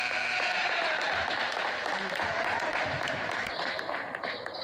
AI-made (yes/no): yes